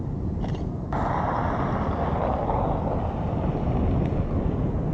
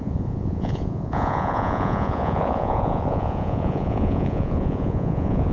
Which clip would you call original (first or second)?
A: first